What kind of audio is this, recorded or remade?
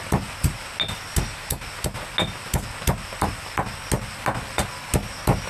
recorded